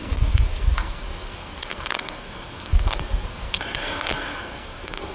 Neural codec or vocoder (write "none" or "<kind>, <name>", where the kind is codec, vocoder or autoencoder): codec, SNAC